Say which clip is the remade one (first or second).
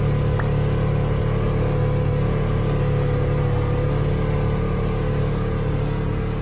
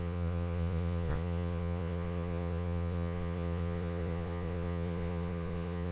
second